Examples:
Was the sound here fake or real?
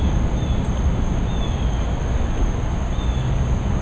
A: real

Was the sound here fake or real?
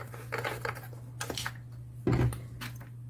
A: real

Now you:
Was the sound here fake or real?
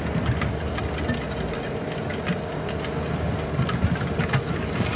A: real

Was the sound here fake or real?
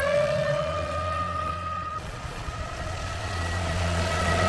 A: fake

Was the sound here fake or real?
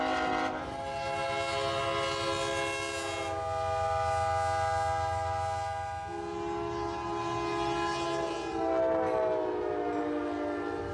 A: real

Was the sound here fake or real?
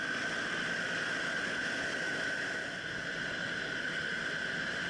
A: real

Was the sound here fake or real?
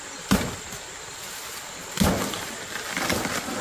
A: real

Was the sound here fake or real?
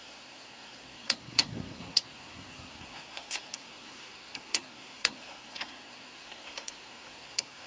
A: fake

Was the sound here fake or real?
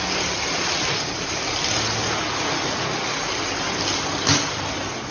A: real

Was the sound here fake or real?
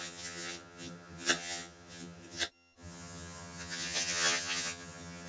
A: fake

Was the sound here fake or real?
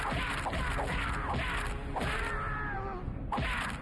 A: real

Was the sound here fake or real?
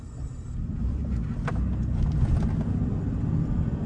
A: real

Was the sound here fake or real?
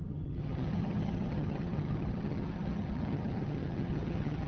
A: fake